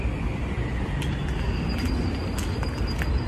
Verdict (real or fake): real